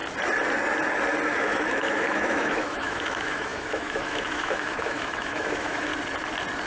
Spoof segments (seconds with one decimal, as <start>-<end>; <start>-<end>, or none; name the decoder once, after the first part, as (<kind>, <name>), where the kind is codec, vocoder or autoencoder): 1.3-5.9 (autoencoder, DAC-VAE)